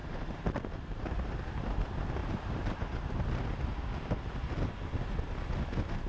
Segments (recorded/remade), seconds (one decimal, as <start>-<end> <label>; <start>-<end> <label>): 0.0-1.8 remade; 1.8-2.2 recorded; 2.2-3.1 remade; 3.1-6.1 recorded